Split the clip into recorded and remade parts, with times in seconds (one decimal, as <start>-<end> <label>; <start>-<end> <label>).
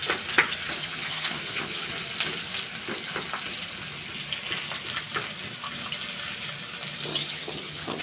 0.0-0.8 recorded; 0.8-1.9 remade; 1.9-7.1 recorded; 7.1-8.0 remade